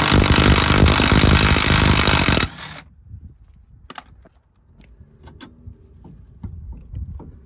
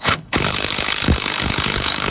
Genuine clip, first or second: first